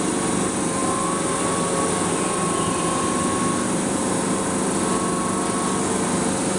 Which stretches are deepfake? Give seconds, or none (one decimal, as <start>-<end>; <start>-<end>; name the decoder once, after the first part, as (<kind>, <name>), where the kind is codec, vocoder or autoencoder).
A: none